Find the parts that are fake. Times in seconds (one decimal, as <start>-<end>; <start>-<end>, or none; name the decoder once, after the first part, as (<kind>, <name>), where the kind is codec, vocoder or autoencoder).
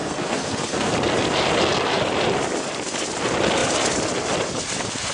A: 0.0-0.9 (codec, SNAC)